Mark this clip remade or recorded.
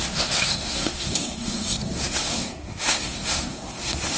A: remade